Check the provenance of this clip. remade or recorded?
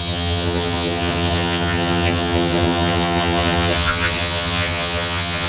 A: remade